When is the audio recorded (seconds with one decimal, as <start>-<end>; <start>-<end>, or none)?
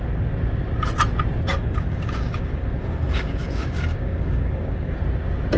0.0-1.6; 5.0-5.6